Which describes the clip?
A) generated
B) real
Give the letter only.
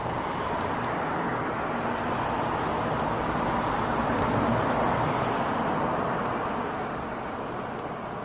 B